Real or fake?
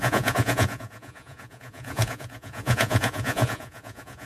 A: fake